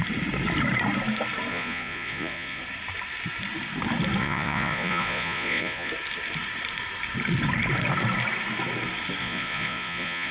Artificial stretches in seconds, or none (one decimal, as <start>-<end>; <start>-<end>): 1.5-2.6; 4.2-5.9; 9.2-10.3